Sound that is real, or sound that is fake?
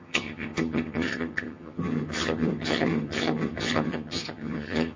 fake